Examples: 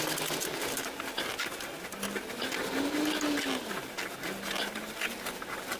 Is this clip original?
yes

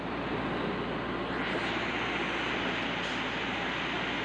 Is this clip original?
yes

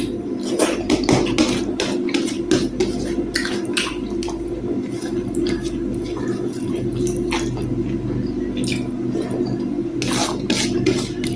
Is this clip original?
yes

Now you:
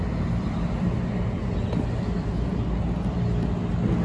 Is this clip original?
yes